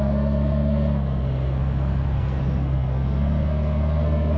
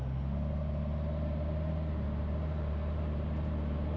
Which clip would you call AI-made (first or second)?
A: first